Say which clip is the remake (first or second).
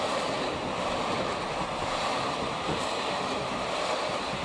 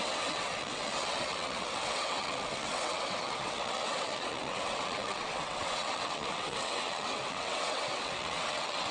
second